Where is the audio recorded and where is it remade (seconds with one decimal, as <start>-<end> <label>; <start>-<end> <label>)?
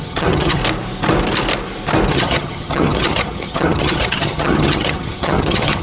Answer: 0.0-0.6 remade; 0.6-2.1 recorded; 2.1-5.8 remade